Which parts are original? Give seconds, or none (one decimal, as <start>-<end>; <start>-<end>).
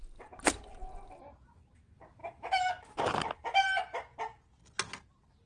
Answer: 0.0-2.2; 2.7-5.5